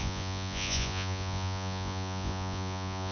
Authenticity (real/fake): fake